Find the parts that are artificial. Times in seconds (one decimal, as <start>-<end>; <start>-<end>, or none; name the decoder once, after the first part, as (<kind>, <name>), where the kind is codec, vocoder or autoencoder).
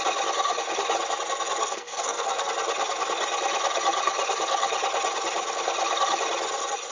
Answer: 1.6-2.5 (codec, SNAC)